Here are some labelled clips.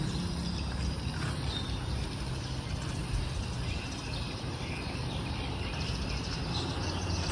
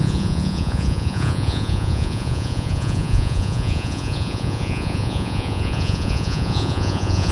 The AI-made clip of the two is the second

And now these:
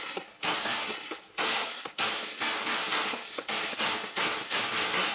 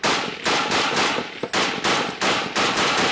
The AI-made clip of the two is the first